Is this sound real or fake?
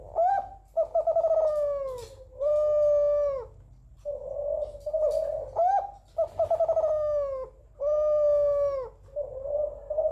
real